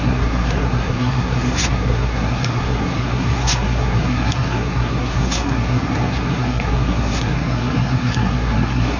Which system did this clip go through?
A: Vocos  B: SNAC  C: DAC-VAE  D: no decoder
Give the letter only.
B